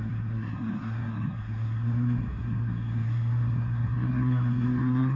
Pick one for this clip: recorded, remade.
remade